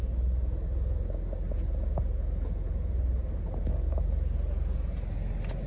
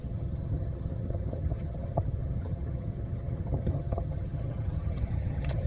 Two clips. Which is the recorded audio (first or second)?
first